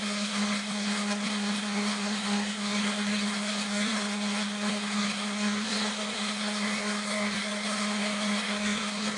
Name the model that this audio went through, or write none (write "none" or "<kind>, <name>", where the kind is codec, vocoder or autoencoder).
codec, SNAC